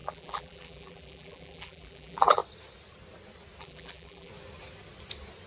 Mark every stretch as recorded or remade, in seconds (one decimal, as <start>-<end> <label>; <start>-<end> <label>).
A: 0.0-2.4 remade; 2.4-3.6 recorded; 3.6-4.3 remade; 4.3-5.5 recorded